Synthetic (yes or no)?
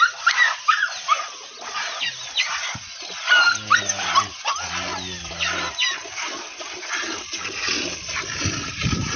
no